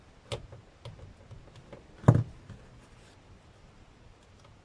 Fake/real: real